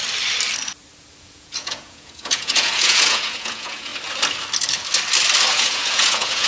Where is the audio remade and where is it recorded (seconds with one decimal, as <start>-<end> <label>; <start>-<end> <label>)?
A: 0.0-1.2 recorded; 1.2-3.9 remade; 3.9-5.5 recorded; 5.5-6.5 remade